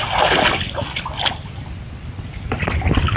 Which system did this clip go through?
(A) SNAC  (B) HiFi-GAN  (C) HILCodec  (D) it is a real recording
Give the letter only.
D